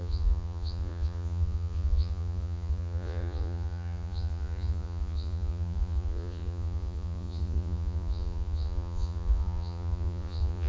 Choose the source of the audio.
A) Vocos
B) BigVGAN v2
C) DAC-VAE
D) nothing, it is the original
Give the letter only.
A